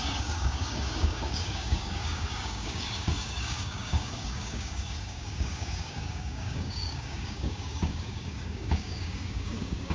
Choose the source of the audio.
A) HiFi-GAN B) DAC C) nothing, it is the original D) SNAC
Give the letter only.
B